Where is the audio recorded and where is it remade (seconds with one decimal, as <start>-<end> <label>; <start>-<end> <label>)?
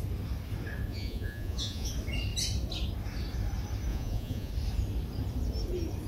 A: 0.0-0.9 recorded; 0.9-1.9 remade; 1.9-3.9 recorded; 3.9-4.5 remade; 4.5-6.1 recorded